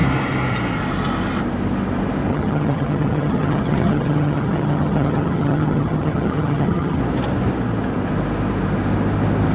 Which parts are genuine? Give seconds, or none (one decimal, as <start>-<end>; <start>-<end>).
0.0-2.3; 7.0-9.5